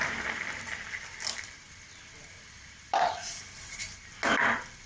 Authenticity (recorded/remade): recorded